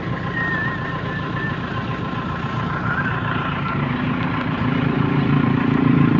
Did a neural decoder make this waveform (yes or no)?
yes